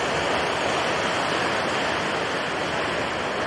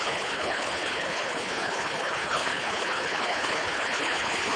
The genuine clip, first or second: first